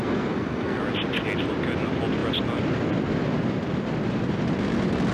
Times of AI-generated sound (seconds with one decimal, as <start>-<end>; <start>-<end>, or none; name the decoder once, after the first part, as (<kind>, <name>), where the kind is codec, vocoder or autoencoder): 0.0-0.8 (codec, SNAC)